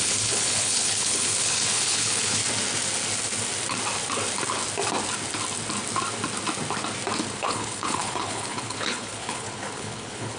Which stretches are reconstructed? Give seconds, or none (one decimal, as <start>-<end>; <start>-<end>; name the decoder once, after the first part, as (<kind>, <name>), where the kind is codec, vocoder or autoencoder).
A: 0.0-2.4 (codec, HILCodec); 7.4-10.4